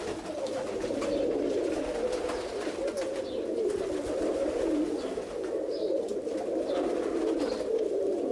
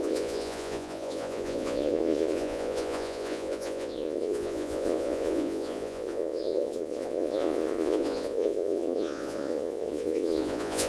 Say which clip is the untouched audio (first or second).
first